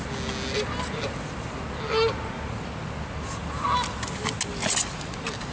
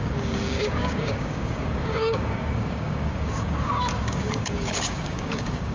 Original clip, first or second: first